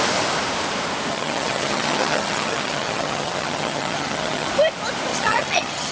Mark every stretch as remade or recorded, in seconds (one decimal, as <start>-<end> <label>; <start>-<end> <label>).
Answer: 0.0-1.1 recorded; 1.1-4.5 remade; 4.5-5.1 recorded; 5.1-5.9 remade